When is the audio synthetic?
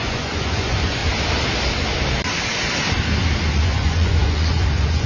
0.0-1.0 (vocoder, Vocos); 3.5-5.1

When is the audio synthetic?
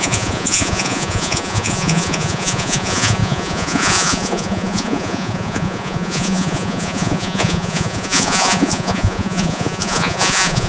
0.0-10.7 (vocoder, Vocos)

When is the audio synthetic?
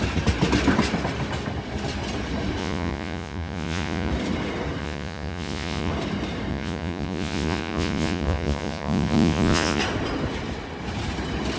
2.6-4.1 (vocoder, Vocos); 4.8-5.9; 6.5-9.8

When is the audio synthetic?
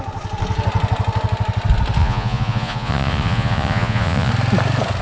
2.0-4.3 (vocoder, Vocos)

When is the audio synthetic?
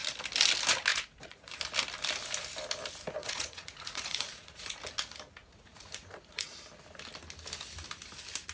0.9-1.6 (vocoder, Vocos); 3.2-4.8; 5.4-6.6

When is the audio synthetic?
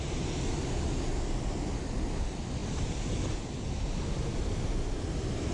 none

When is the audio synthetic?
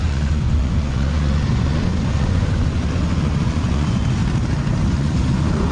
0.0-4.2 (vocoder, Vocos); 4.9-5.7